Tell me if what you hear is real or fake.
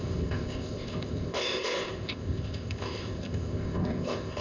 fake